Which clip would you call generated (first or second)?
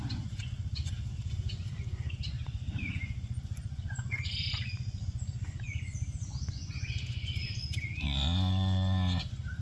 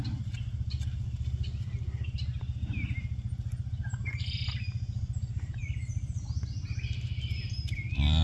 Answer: first